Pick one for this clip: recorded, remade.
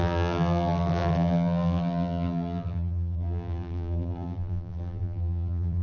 remade